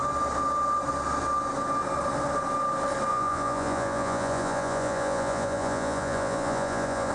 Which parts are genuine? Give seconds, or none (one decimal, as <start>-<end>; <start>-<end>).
0.0-3.1